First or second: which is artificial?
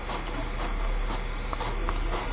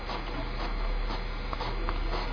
first